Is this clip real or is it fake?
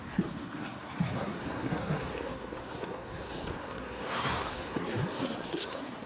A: fake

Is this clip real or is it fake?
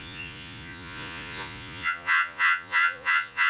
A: fake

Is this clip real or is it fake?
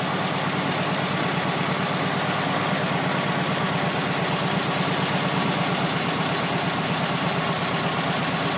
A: real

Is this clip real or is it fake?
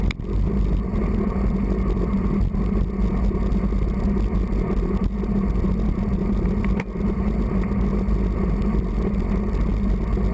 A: real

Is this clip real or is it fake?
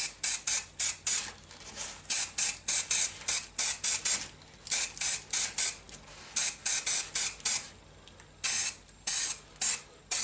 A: real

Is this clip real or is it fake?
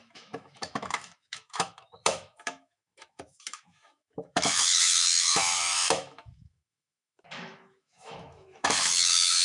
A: fake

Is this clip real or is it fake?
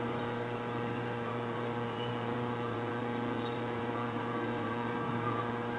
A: fake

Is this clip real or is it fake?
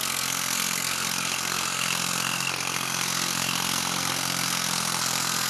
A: fake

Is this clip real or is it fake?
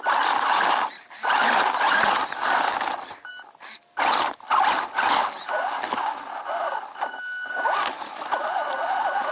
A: real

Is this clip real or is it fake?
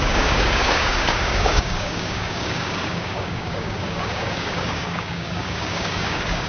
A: fake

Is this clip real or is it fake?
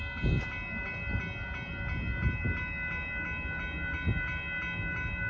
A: real